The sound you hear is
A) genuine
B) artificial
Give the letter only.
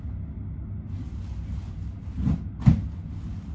A